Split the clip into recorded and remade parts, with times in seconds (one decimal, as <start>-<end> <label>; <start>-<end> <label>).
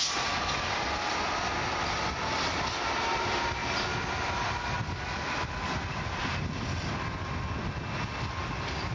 0.0-8.9 recorded